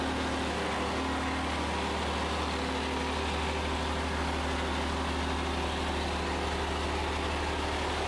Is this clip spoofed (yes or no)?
no